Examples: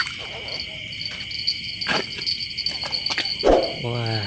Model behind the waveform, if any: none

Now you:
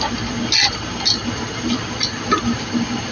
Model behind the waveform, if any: none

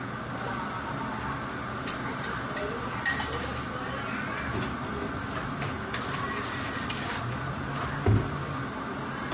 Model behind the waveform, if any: none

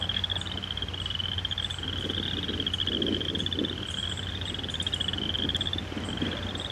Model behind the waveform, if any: none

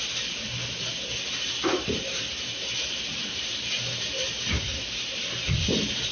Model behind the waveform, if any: vocoder, BigVGAN v2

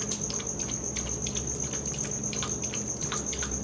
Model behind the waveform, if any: none